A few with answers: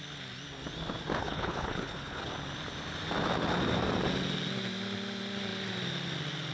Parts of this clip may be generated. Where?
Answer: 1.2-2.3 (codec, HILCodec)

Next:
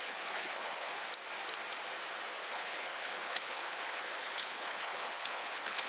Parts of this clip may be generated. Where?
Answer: 0.0-1.0 (codec, HILCodec); 2.4-5.9

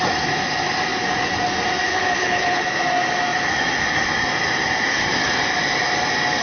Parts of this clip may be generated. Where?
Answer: 1.9-2.6 (codec, HILCodec)

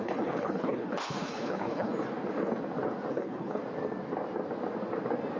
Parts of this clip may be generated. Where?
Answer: 0.0-1.9 (codec, HILCodec); 3.1-3.6

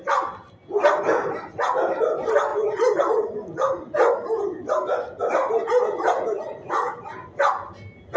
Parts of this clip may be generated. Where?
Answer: none